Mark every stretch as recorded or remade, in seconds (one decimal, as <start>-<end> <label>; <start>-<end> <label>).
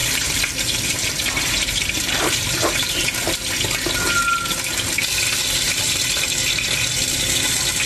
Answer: 0.0-3.3 remade; 3.3-7.9 recorded